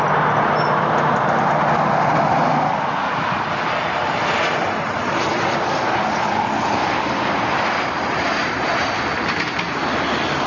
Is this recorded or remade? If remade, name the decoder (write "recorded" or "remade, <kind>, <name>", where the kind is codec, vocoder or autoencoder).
recorded